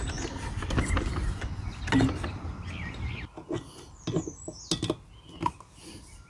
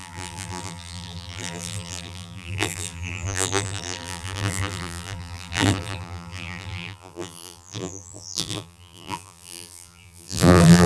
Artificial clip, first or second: second